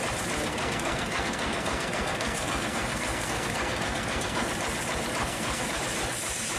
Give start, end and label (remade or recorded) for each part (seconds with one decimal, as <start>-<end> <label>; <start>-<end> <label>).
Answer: 0.0-0.5 recorded; 0.5-4.5 remade; 4.5-5.2 recorded; 5.2-5.8 remade; 5.8-6.6 recorded